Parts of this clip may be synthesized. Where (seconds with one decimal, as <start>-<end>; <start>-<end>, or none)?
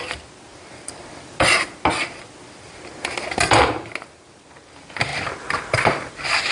5.1-6.1